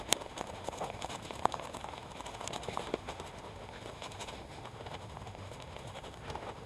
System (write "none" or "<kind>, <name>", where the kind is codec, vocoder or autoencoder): autoencoder, DAC-VAE